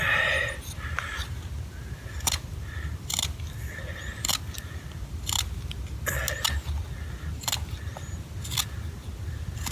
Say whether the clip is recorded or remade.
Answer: recorded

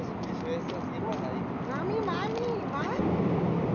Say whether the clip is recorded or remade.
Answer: recorded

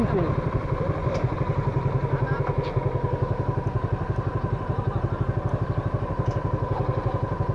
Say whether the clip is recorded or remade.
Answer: recorded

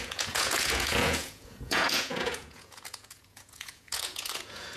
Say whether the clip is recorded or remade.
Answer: remade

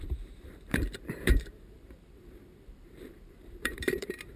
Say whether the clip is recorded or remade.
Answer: remade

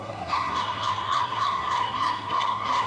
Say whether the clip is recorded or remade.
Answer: remade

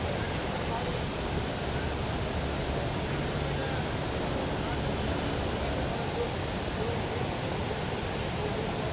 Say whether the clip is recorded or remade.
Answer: recorded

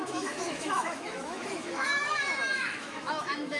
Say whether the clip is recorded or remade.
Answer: remade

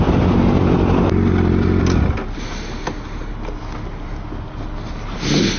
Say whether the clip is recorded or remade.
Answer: recorded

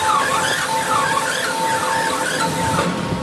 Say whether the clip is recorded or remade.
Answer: recorded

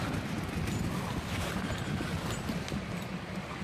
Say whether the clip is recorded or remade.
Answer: recorded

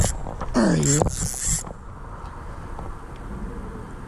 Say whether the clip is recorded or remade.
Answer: recorded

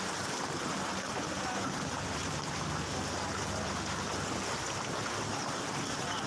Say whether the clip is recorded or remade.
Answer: recorded